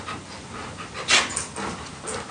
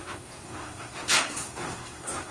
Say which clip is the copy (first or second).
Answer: second